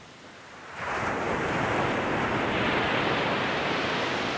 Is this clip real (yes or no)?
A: yes